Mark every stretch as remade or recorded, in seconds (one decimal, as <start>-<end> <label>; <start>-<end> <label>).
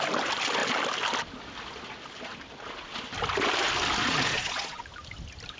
0.0-4.0 recorded; 4.0-4.8 remade; 4.8-5.6 recorded